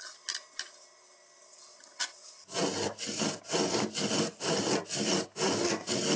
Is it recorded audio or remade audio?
recorded